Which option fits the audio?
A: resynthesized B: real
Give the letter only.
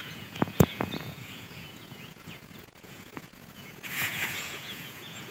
A